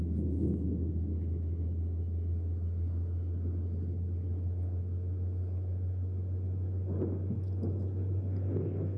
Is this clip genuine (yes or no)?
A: yes